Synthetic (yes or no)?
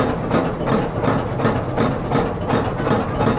no